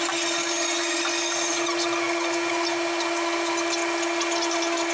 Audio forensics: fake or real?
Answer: real